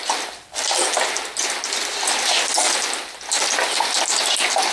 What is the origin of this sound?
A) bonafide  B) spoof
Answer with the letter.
A